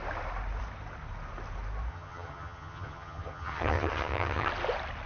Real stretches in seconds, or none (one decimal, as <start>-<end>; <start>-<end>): 0.0-1.9; 4.5-5.1